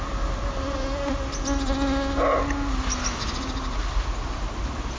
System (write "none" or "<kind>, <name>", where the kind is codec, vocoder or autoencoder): none